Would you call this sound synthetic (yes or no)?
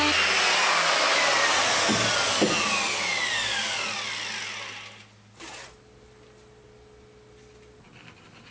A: no